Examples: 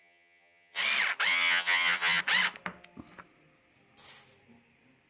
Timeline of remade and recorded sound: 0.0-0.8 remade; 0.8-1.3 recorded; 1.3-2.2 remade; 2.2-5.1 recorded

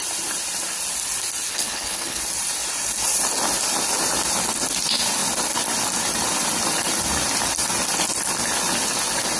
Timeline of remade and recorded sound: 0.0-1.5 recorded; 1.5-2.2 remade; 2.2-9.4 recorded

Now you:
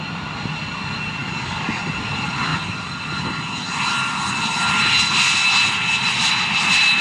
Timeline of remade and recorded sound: 0.0-1.2 recorded; 1.2-1.8 remade; 1.8-7.0 recorded